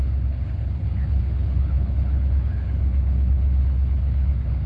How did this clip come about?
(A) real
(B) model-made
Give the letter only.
B